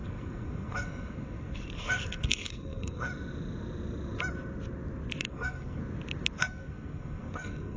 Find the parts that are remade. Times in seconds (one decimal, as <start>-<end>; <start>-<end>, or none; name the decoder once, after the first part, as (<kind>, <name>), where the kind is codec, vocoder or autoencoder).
0.0-3.1 (codec, SNAC); 5.2-5.8; 6.4-7.8